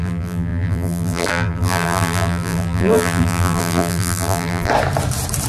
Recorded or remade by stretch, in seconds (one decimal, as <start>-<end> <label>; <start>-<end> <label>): 0.0-4.7 remade; 4.7-5.5 recorded